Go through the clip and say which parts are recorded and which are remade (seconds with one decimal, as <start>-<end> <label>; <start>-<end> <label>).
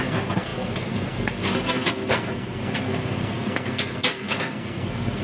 0.0-5.2 remade